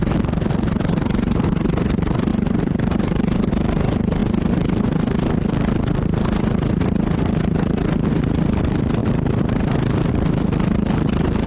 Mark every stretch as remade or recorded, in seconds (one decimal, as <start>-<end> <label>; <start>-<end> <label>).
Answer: 0.0-2.3 recorded; 2.3-3.5 remade; 3.5-9.0 recorded; 9.0-10.1 remade; 10.1-11.5 recorded